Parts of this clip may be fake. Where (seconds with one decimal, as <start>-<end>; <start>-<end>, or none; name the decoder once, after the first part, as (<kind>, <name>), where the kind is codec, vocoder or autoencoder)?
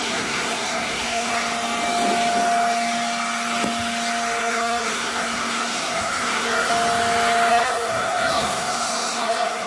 0.0-1.3 (codec, SNAC); 4.4-6.7; 7.5-9.7